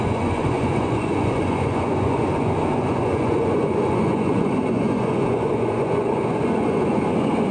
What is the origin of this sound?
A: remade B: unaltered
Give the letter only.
A